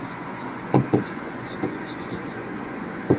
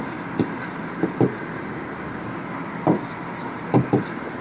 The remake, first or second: first